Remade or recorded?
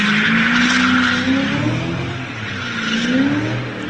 recorded